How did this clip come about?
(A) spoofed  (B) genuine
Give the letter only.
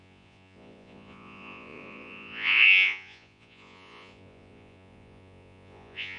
A